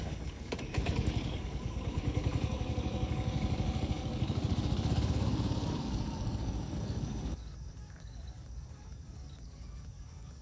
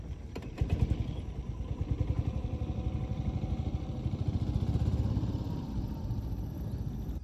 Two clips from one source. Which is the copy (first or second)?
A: first